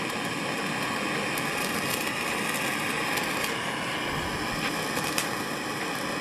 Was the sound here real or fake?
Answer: real